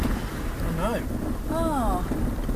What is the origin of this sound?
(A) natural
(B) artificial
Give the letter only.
A